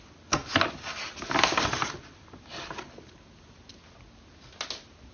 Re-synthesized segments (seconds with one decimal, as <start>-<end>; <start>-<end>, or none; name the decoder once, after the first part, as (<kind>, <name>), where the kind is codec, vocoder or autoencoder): none